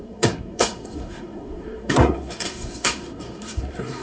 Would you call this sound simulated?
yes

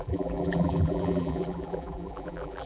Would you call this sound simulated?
yes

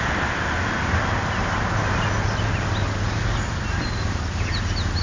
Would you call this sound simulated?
no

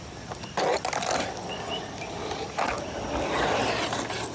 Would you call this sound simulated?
no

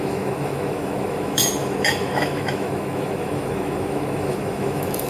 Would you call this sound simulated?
yes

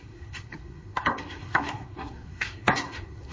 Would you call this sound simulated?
yes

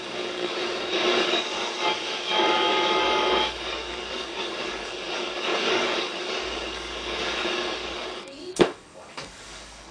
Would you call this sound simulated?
yes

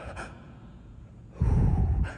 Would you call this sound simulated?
yes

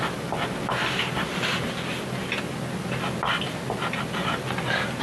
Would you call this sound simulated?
no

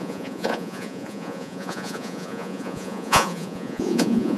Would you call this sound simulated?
yes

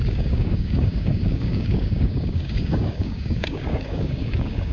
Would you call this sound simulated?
yes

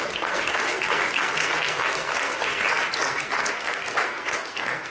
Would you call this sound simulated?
yes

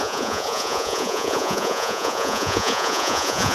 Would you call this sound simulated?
yes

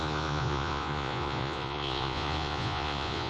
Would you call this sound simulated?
yes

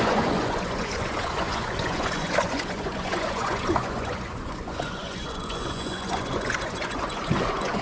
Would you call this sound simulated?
yes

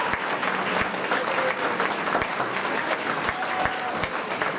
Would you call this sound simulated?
no